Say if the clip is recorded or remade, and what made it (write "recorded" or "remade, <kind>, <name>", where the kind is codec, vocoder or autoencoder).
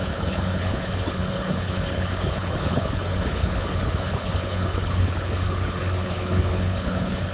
remade, codec, HILCodec